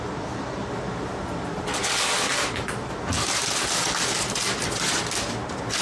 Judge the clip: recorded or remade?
recorded